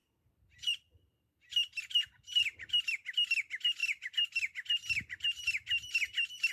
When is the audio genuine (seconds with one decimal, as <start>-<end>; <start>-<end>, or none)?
2.9-3.8